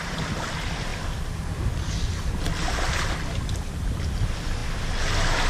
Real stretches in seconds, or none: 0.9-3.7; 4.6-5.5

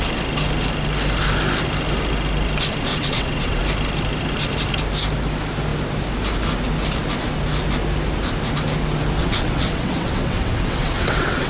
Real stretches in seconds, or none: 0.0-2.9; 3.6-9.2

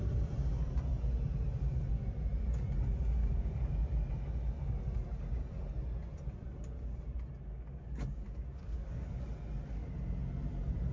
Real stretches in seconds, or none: 0.0-3.2; 3.7-7.5; 9.2-10.9